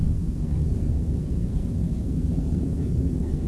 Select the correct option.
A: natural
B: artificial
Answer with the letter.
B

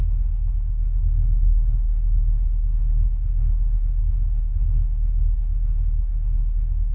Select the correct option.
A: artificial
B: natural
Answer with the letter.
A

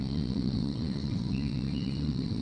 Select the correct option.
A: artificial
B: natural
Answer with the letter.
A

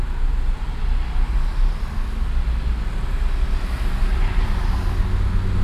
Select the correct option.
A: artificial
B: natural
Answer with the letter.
B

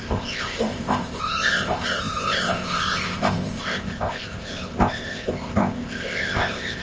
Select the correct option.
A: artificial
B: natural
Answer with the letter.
A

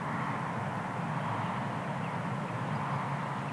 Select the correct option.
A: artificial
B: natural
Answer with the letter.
B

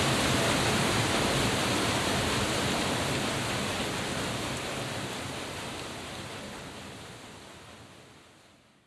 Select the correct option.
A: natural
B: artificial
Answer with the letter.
A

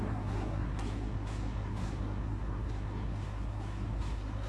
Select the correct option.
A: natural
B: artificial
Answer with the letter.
B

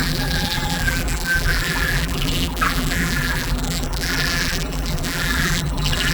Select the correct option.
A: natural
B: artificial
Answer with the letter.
B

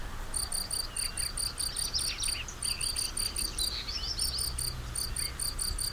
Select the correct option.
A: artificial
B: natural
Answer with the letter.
B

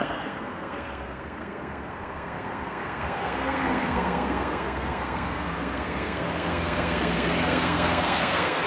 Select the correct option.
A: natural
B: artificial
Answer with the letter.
B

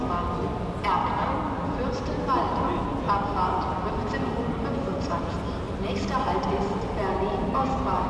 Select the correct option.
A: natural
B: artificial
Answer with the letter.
A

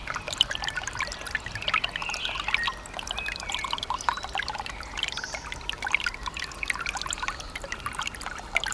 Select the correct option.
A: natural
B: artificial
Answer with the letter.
A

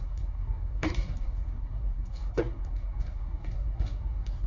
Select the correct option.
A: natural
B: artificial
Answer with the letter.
B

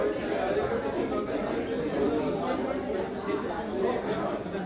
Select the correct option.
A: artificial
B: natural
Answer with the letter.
B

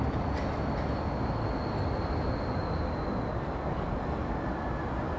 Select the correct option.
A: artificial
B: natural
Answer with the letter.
B